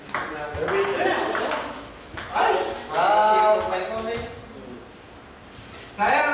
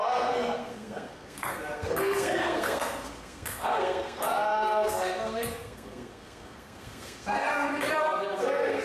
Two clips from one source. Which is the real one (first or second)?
first